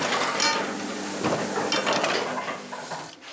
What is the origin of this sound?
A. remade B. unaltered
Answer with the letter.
B